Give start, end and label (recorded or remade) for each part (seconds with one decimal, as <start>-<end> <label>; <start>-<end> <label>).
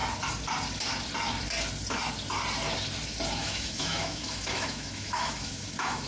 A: 0.0-3.4 recorded; 3.4-6.1 remade